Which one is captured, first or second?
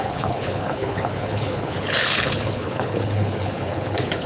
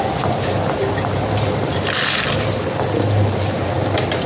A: second